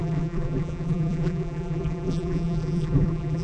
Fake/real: fake